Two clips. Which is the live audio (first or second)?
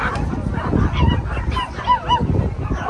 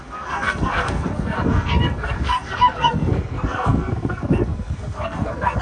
first